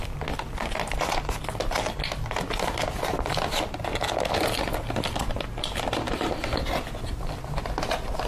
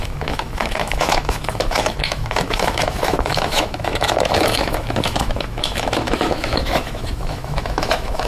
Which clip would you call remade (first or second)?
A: second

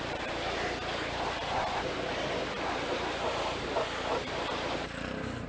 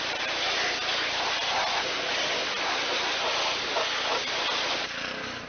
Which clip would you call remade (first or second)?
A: first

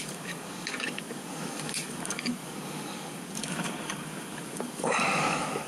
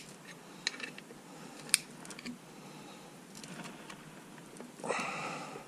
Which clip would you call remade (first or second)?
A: first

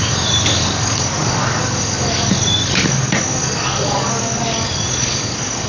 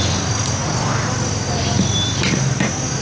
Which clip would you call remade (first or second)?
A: first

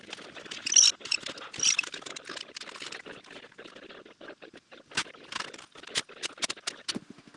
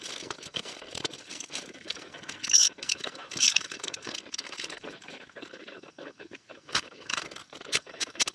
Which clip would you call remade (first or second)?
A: second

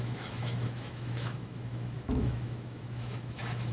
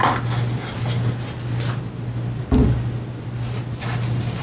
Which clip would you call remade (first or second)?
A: first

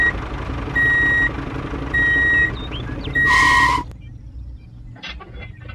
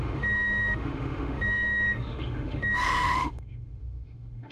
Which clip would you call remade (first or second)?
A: second